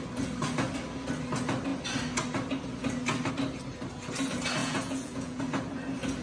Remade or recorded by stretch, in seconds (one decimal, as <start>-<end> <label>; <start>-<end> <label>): 0.0-4.6 recorded; 4.6-5.4 remade; 5.4-6.2 recorded

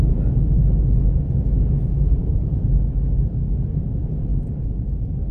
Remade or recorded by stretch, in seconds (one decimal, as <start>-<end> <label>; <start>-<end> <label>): 0.0-2.2 recorded; 2.2-3.6 remade; 3.6-4.3 recorded; 4.3-5.3 remade